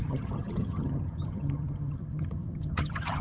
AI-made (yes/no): yes